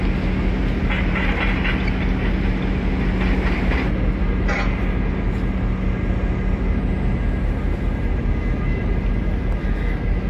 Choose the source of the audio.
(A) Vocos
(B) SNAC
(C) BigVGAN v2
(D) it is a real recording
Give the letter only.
D